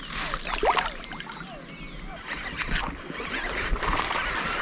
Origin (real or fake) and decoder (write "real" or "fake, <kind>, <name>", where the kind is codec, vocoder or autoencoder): real